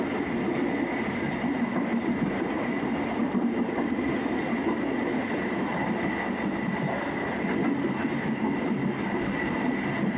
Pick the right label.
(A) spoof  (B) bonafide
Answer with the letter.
B